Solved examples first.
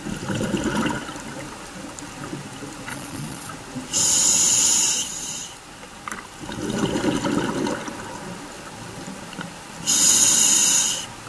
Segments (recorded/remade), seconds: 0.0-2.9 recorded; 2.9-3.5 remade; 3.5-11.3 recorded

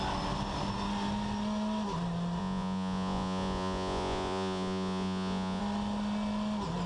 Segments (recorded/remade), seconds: 0.0-2.4 recorded; 2.4-5.6 remade; 5.6-6.9 recorded

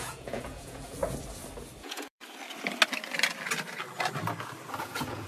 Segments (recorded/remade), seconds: 0.0-1.0 remade; 1.0-1.8 recorded; 1.8-2.2 remade; 2.2-4.8 recorded; 4.8-5.3 remade